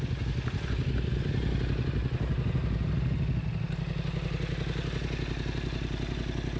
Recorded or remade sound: recorded